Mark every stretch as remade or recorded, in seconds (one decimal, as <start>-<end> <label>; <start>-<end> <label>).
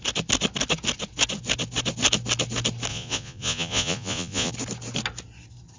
0.0-2.9 recorded; 2.9-4.5 remade; 4.5-5.8 recorded